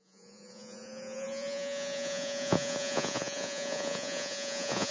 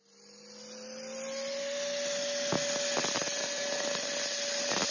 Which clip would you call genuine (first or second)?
second